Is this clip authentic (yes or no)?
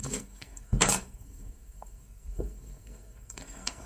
no